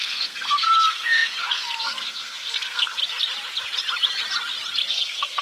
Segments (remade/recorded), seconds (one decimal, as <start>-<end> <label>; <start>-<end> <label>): 0.0-3.0 remade; 3.0-4.9 recorded; 4.9-5.4 remade